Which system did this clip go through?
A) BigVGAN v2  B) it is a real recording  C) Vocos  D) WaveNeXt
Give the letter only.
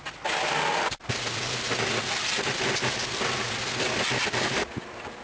B